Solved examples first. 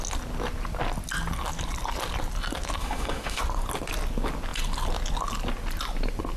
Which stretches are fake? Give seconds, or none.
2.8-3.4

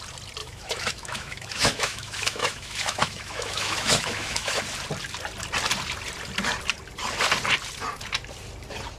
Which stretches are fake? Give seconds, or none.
0.4-4.6

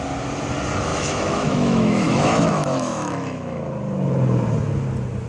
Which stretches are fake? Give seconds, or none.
0.9-3.7

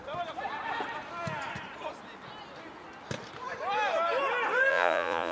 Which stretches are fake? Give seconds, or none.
4.7-5.3

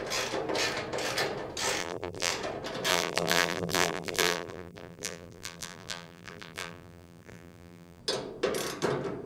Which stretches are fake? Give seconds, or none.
1.8-2.3; 2.9-8.0